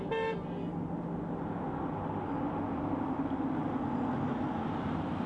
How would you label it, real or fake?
real